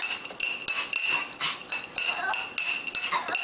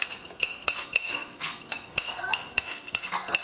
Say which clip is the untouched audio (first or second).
first